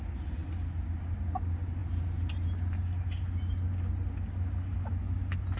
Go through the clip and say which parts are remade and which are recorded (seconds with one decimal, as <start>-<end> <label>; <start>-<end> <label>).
0.0-5.6 recorded